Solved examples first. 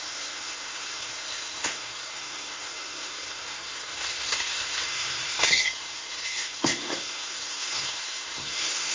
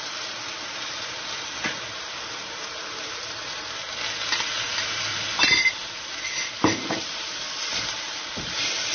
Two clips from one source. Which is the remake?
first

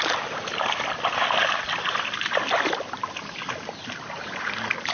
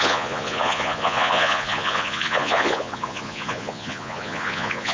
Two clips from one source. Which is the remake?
second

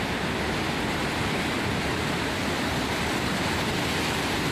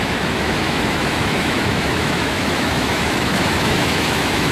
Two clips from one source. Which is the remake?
second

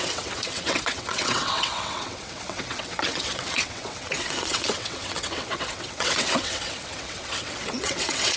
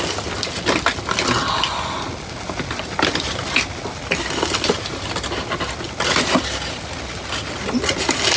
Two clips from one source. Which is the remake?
first